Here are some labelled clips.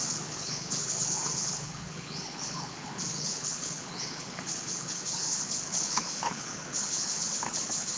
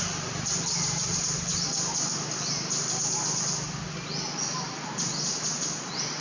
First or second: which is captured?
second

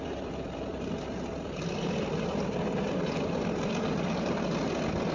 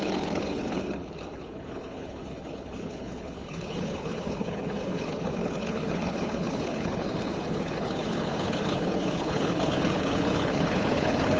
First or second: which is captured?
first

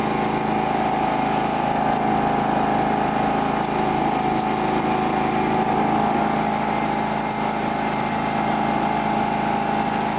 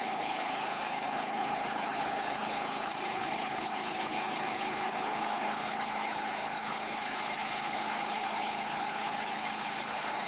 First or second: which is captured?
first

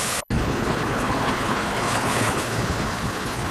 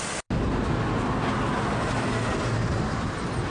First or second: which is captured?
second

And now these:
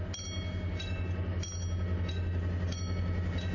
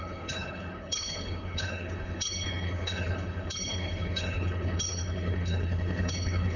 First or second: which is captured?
first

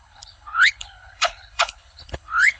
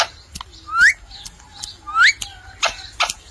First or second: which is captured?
second